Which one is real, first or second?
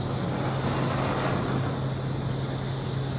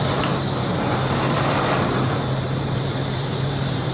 first